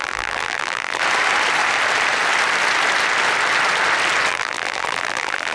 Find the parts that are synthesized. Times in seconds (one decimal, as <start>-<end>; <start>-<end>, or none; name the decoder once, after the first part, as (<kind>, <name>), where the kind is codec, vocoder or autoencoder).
0.0-1.0 (vocoder, BigVGAN v2); 4.3-5.5